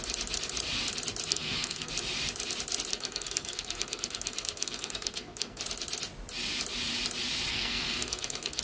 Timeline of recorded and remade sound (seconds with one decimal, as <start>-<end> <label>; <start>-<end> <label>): 0.0-1.3 recorded; 1.3-1.9 remade; 1.9-2.9 recorded; 2.9-5.6 remade; 5.6-7.5 recorded; 7.5-8.6 remade